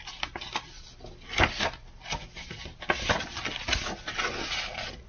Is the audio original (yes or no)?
yes